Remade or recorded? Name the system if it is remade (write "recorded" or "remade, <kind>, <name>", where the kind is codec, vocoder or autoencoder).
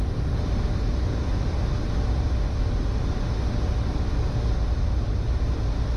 recorded